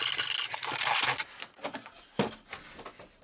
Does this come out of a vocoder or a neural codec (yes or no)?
no